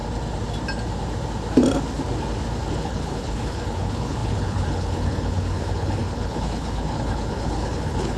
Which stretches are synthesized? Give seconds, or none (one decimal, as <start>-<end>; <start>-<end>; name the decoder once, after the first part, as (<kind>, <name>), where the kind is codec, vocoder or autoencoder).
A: 2.7-8.2 (codec, HILCodec)